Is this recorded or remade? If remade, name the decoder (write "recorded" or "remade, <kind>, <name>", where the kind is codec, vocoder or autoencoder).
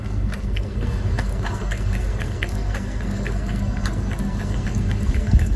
remade, codec, SNAC